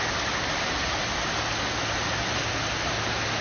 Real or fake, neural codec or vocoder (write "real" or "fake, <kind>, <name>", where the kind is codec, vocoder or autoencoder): real